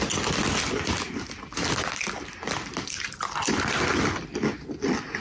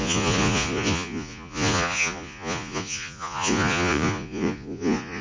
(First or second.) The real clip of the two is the first